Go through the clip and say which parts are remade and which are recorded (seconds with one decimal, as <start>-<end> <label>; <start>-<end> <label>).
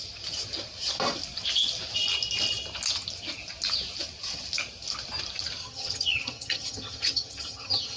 0.0-5.6 recorded; 5.6-8.0 remade